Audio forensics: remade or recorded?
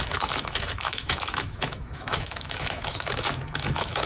remade